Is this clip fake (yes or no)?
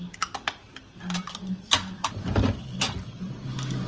no